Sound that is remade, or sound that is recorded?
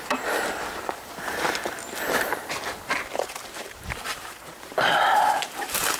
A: remade